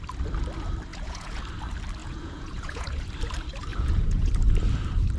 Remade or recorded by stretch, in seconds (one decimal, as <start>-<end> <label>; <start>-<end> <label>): 0.0-0.9 recorded; 0.9-1.4 remade; 1.4-2.0 recorded; 2.0-3.1 remade; 3.1-3.7 recorded; 3.7-4.3 remade; 4.3-5.2 recorded